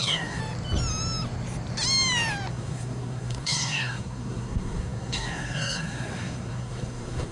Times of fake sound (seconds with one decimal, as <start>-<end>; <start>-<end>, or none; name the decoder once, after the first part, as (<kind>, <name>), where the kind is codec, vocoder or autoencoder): 0.0-0.4 (codec, SNAC); 2.5-7.3